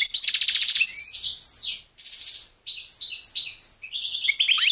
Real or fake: real